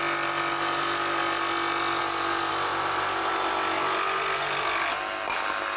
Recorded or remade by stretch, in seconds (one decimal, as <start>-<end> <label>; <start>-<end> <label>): 0.0-5.8 recorded